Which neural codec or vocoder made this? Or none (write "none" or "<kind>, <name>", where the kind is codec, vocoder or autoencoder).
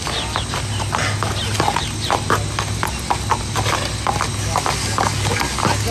none